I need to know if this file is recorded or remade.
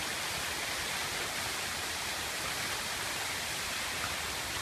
recorded